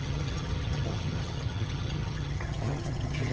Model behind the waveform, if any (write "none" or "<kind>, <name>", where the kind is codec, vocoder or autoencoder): vocoder, HiFi-GAN